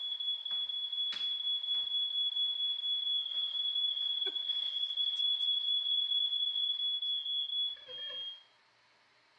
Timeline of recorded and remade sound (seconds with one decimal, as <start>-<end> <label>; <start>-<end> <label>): 0.0-3.3 recorded; 3.3-6.8 remade; 6.8-9.4 recorded